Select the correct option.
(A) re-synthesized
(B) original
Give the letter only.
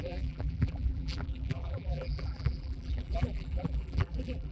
A